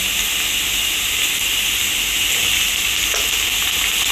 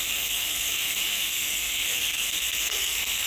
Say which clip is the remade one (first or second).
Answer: second